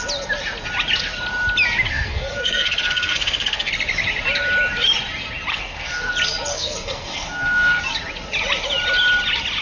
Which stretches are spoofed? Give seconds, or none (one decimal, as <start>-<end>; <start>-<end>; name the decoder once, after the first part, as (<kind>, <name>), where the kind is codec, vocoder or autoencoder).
1.9-3.7 (codec, SNAC); 5.5-6.1; 6.5-7.8